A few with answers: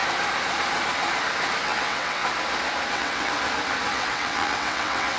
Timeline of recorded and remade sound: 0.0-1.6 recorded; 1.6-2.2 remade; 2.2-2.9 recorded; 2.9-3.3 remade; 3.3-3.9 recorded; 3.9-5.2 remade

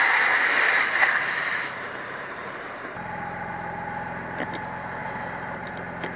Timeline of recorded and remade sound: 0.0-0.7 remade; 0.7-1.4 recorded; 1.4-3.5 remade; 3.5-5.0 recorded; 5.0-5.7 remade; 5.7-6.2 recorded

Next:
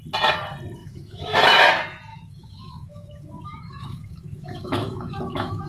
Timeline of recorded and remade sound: 0.0-0.8 recorded; 0.8-1.7 remade; 1.7-2.1 recorded; 2.1-5.7 remade

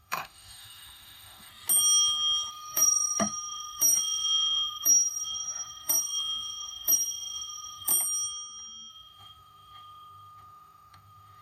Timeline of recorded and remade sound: 0.0-1.5 remade; 1.5-2.5 recorded; 2.5-7.9 remade; 7.9-8.9 recorded; 8.9-11.4 remade

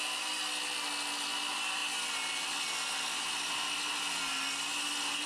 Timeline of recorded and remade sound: 0.0-5.3 recorded